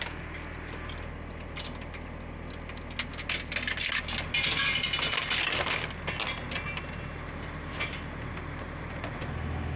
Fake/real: real